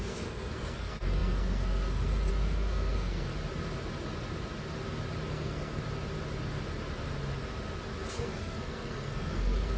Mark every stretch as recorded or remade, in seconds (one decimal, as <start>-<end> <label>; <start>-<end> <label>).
0.0-3.3 remade; 3.3-5.3 recorded; 5.3-5.8 remade; 5.8-8.1 recorded; 8.1-9.8 remade